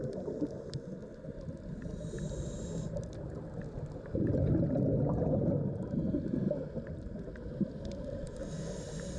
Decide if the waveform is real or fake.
real